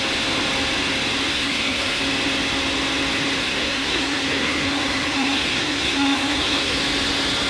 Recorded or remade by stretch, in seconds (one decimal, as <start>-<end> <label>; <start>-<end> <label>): 0.0-1.3 recorded; 1.3-2.0 remade; 2.0-3.4 recorded; 3.4-6.8 remade; 6.8-7.5 recorded